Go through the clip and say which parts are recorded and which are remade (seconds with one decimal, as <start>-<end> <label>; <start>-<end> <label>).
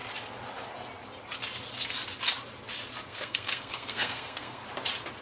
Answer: 0.0-3.1 recorded; 3.1-4.6 remade; 4.6-5.2 recorded